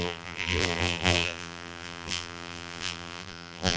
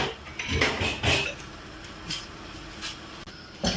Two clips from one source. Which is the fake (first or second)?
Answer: first